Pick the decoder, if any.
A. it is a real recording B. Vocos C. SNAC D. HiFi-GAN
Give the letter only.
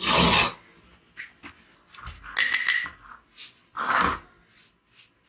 A